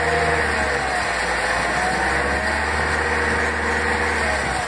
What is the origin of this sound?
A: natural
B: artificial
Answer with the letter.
A